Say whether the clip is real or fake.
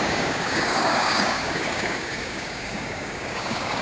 fake